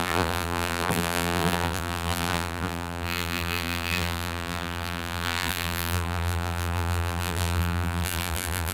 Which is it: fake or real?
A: fake